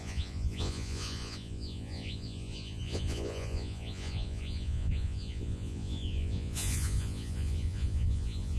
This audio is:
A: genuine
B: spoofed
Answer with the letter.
B